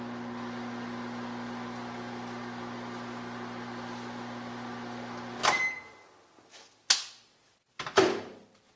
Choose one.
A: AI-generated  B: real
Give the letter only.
B